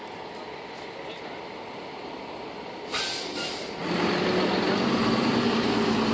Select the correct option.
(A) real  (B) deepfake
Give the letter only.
A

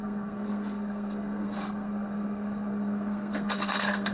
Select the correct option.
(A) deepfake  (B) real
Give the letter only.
A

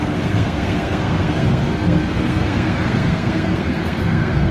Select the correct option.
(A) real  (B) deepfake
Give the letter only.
B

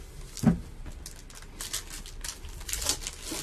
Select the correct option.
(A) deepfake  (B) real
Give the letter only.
B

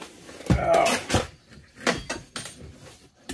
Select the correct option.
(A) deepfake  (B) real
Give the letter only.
B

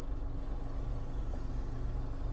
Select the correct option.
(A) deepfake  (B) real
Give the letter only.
B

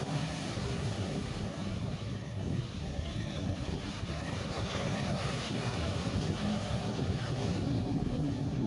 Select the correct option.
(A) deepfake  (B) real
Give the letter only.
A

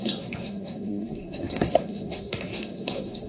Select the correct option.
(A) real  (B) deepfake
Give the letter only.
B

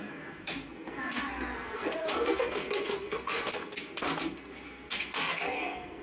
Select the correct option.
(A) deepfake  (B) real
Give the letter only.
A